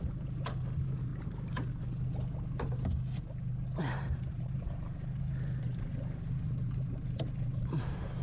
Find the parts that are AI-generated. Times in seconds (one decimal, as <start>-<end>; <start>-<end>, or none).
0.0-1.1; 3.8-8.2